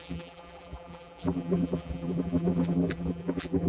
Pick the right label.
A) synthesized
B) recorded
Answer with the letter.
A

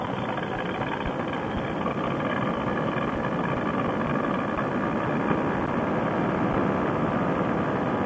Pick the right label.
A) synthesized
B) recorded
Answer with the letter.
B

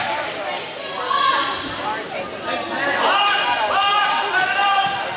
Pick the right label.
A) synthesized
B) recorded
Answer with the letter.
A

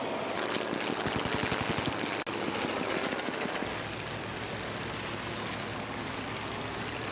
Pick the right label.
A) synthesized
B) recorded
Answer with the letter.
B